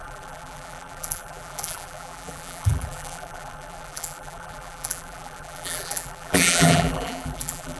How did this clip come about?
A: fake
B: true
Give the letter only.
A